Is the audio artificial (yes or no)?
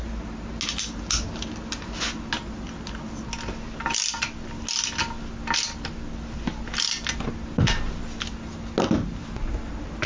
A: no